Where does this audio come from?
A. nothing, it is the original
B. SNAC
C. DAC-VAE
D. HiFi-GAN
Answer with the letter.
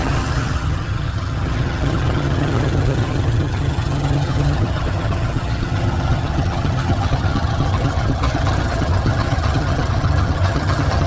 D